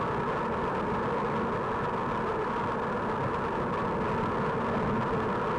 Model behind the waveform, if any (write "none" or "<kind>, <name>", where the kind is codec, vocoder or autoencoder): none